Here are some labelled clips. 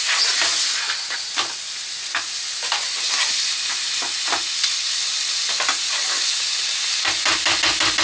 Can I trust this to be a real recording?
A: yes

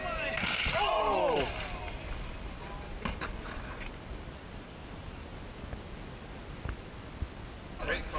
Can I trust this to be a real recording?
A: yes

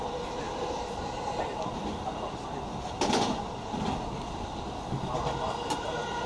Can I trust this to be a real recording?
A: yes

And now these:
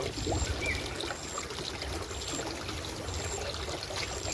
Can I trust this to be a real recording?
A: yes